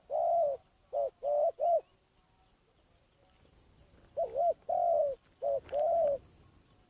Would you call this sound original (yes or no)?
yes